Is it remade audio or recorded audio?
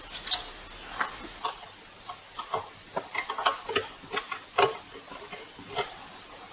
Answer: recorded